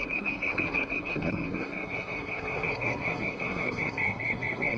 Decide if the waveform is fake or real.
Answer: fake